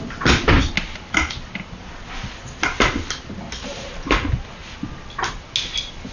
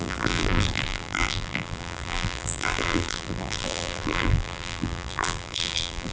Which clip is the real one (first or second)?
first